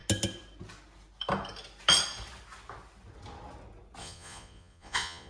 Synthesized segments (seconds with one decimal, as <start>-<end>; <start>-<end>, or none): 4.0-5.3